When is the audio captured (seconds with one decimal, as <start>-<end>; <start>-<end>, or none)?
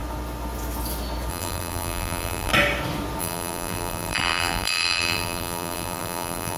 0.0-1.3; 2.5-3.2